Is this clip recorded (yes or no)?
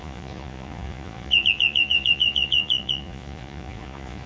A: no